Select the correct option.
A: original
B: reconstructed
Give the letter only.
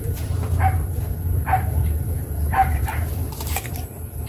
B